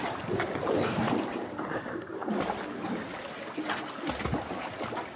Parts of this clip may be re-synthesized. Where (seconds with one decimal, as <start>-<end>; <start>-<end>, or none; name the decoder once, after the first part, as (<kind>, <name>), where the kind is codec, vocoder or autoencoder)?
none

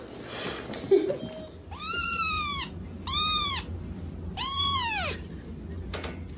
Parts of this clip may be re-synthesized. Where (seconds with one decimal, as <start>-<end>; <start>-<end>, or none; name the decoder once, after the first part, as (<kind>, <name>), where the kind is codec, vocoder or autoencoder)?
none

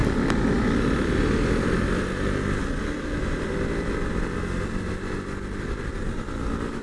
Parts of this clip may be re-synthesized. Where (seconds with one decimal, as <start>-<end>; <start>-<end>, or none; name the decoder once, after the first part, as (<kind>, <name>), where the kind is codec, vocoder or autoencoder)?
none

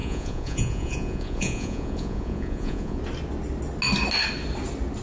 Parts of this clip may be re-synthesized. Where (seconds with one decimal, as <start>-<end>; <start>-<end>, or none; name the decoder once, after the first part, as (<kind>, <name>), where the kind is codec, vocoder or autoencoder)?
0.0-3.0 (vocoder, Vocos)

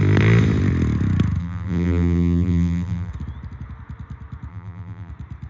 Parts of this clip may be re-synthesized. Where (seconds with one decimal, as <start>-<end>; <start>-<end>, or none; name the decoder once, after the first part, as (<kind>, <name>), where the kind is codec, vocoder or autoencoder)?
1.4-3.1 (vocoder, BigVGAN v2); 4.5-5.1